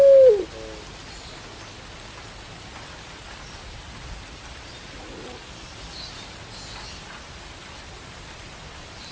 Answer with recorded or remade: recorded